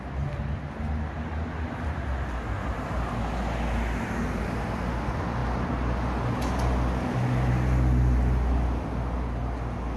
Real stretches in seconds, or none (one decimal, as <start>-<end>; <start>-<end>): 0.0-10.0